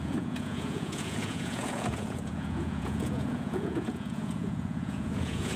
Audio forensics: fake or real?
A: fake